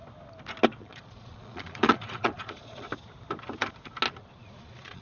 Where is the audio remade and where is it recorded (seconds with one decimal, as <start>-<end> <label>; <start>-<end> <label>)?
0.0-0.8 recorded; 0.8-2.9 remade; 2.9-4.2 recorded; 4.2-5.0 remade